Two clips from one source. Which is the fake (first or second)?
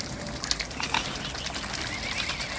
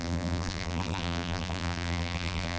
second